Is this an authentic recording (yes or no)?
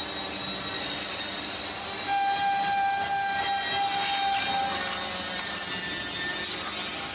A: yes